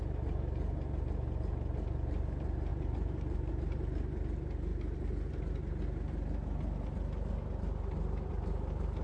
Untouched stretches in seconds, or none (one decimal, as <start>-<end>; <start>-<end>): 0.0-2.7; 3.5-9.0